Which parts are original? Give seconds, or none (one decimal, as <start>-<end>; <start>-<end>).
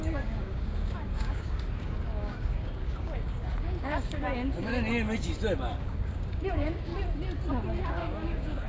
4.7-5.8; 6.9-7.8